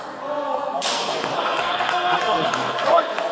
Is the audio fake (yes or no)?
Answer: yes